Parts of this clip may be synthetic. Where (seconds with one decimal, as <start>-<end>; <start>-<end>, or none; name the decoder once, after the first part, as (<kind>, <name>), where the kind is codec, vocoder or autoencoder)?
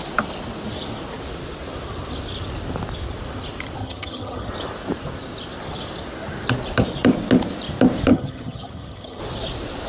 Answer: 3.8-4.5 (vocoder, HiFi-GAN); 8.1-9.2